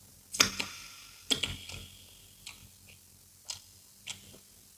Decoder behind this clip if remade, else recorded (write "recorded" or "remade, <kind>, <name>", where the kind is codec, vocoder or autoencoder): recorded